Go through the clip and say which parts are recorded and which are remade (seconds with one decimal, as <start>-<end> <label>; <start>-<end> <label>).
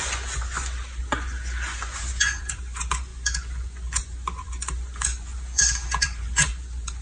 0.0-7.0 remade